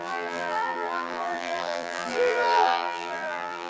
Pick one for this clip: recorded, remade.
remade